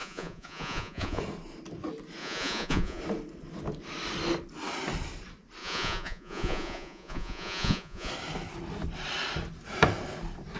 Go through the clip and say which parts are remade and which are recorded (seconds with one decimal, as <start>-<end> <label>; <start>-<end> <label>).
0.0-1.2 remade; 1.2-2.2 recorded; 2.2-3.0 remade; 3.0-5.6 recorded; 5.6-8.1 remade; 8.1-10.6 recorded